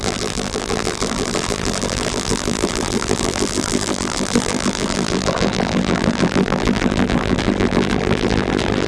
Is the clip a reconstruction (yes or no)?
yes